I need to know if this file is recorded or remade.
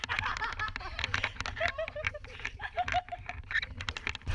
recorded